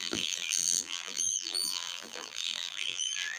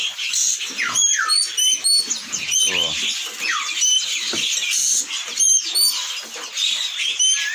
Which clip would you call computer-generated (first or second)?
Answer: first